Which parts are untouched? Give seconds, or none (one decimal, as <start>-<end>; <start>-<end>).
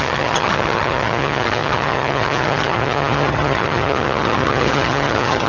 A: none